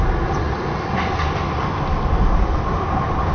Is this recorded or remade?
recorded